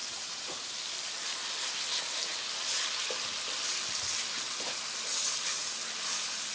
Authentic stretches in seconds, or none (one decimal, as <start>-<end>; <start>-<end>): 0.7-6.5